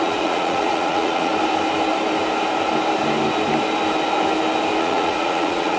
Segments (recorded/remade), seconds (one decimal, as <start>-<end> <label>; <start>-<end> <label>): 0.0-1.3 remade; 1.3-4.8 recorded; 4.8-5.8 remade